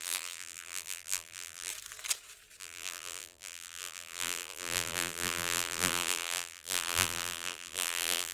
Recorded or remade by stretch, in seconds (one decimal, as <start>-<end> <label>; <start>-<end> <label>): 0.0-1.7 remade; 1.7-2.6 recorded; 2.6-8.3 remade